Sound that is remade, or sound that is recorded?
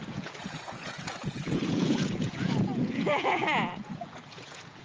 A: remade